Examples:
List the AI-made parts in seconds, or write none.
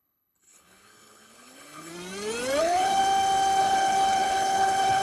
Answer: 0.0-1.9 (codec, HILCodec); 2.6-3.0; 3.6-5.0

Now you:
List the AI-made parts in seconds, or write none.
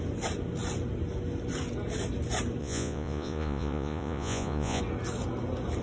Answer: 2.6-4.8 (vocoder, Vocos)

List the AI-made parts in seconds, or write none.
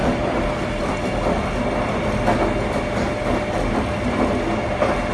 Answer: 0.0-0.9 (vocoder, BigVGAN v2)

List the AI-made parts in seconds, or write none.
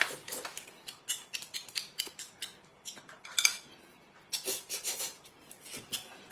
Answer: none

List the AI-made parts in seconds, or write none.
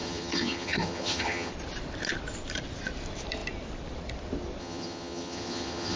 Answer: 0.0-1.5 (vocoder, HiFi-GAN); 4.6-6.0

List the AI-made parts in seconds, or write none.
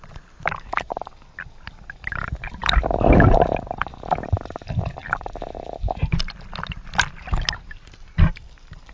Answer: none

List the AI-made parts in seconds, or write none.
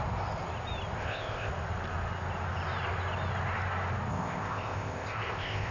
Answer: 1.0-1.5 (codec, ZipCodec); 4.1-5.7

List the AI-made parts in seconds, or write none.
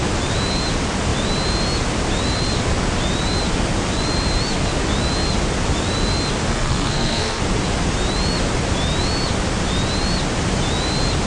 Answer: 6.5-7.4 (codec, SNAC)